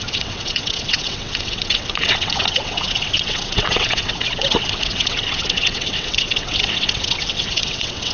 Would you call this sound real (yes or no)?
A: no